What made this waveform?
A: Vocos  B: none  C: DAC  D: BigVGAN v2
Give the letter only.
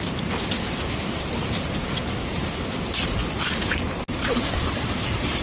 B